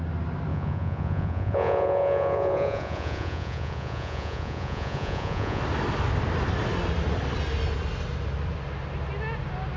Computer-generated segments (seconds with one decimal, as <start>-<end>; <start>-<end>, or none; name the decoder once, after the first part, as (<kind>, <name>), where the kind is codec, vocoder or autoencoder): 0.5-5.6 (vocoder, Vocos)

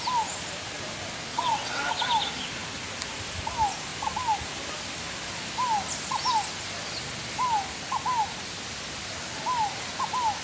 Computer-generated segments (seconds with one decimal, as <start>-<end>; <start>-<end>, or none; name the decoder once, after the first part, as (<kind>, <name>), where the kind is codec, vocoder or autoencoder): 1.3-1.9 (vocoder, WaveNeXt)